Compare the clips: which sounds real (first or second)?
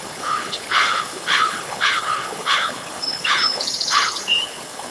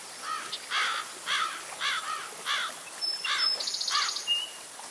second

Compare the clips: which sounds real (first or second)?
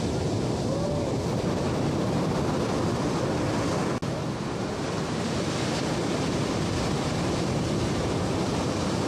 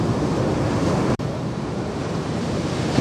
first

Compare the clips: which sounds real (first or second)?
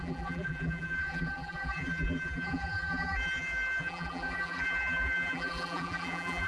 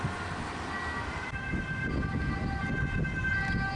second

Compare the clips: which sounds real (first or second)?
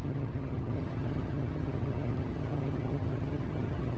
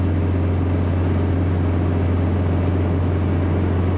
second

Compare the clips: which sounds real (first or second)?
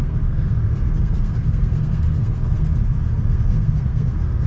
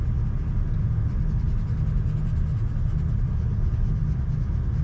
second